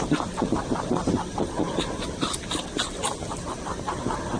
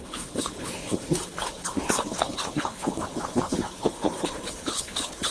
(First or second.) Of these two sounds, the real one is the first